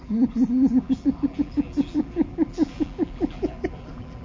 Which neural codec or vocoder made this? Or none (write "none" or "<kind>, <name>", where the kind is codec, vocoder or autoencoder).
vocoder, BigVGAN v2